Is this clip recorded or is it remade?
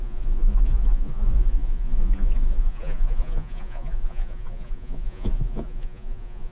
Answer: remade